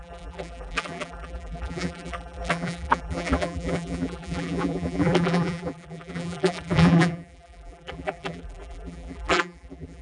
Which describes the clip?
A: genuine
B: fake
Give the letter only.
B